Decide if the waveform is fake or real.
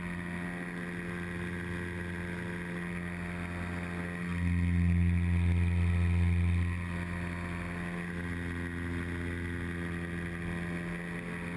real